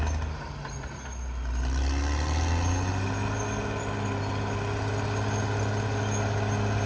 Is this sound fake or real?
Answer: real